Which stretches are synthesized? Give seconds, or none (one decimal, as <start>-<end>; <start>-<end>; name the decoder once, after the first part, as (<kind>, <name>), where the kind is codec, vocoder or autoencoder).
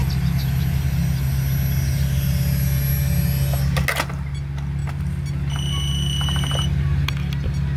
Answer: none